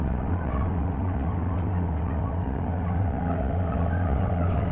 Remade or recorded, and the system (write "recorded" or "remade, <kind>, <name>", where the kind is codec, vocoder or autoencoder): remade, vocoder, WaveNeXt